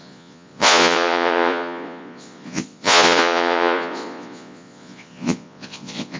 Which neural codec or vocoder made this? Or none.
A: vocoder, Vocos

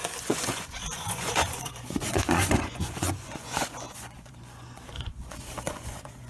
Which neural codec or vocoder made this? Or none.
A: vocoder, Vocos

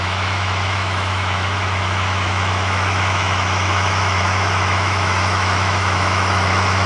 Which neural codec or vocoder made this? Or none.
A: autoencoder, DAC-VAE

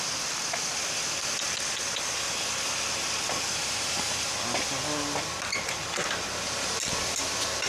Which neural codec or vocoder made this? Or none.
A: none